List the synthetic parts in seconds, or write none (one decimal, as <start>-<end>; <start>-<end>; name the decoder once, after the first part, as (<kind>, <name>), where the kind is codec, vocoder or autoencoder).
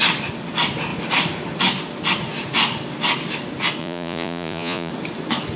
3.8-4.9 (vocoder, Vocos)